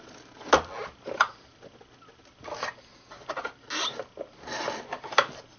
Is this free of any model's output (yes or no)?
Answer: yes